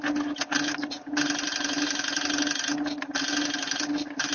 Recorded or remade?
recorded